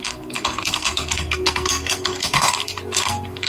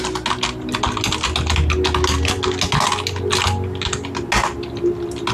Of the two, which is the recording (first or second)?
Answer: second